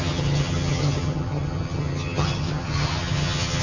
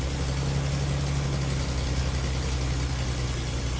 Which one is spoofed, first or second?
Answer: first